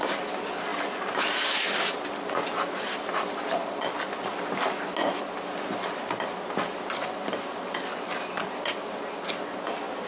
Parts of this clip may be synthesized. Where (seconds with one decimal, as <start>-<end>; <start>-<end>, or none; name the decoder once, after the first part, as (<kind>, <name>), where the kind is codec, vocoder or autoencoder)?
none